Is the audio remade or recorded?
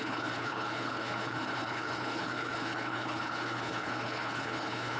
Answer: remade